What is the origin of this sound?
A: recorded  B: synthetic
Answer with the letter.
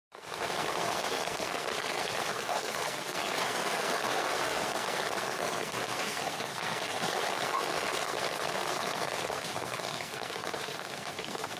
B